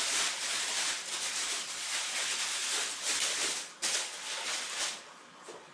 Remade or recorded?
recorded